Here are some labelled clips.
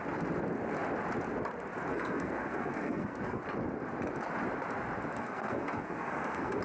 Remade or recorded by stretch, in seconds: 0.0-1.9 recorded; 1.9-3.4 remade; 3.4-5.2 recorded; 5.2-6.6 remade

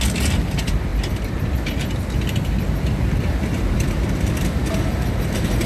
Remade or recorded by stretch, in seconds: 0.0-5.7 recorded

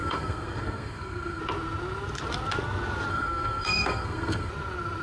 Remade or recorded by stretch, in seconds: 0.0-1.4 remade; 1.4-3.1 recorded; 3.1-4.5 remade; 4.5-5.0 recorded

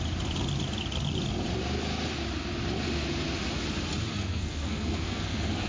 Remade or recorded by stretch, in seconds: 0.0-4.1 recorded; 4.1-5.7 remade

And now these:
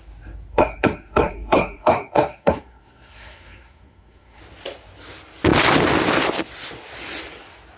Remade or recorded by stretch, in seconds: 0.0-0.5 recorded; 0.5-4.4 remade; 4.4-7.8 recorded